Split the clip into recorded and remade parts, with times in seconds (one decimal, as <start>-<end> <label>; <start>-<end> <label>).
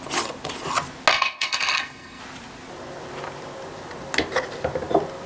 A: 0.0-1.1 recorded; 1.1-2.2 remade; 2.2-5.3 recorded